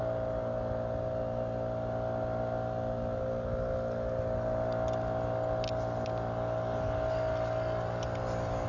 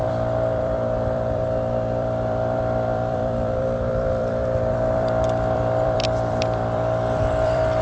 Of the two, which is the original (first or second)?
first